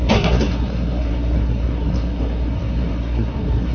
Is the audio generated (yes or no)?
yes